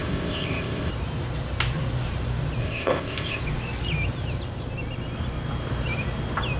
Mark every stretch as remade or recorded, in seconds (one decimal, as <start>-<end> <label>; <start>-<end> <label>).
0.0-0.9 remade; 0.9-2.6 recorded; 2.6-3.4 remade; 3.4-6.6 recorded